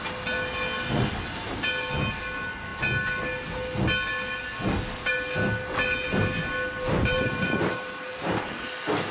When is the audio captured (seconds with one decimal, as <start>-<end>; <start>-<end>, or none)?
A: 0.0-6.9; 8.3-9.1